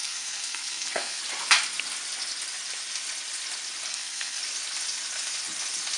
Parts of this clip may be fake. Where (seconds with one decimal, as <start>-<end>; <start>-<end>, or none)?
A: 0.0-1.2; 3.9-4.4